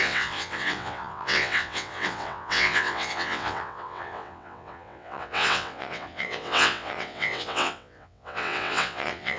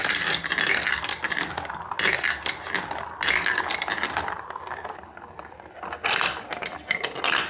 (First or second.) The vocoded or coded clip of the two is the first